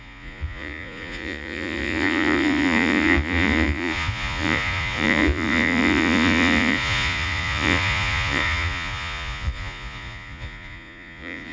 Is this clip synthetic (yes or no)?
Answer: yes